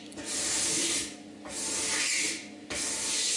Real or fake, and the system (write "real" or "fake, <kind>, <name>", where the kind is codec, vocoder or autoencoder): real